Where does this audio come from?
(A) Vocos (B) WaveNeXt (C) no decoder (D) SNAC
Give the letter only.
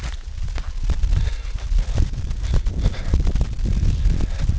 C